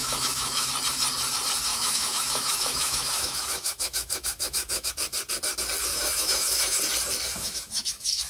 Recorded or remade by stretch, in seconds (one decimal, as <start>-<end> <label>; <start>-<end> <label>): 0.0-0.7 remade; 0.7-1.7 recorded; 1.7-4.9 remade; 4.9-5.9 recorded; 5.9-6.8 remade; 6.8-7.3 recorded; 7.3-8.3 remade